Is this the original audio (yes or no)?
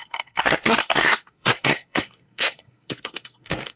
no